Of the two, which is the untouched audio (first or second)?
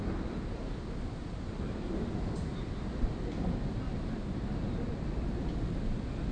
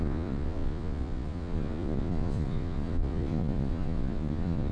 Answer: first